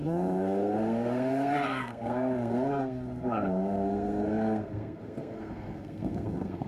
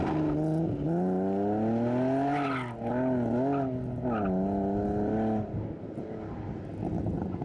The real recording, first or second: second